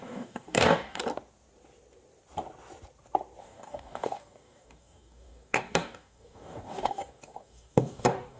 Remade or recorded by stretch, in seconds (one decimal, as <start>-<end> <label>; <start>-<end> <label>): 0.0-1.0 remade; 1.0-3.4 recorded; 3.4-8.4 remade